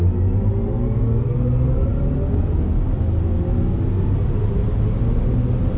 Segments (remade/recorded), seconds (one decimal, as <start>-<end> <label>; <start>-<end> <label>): 0.0-5.8 recorded